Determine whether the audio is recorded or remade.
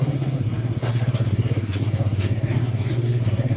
remade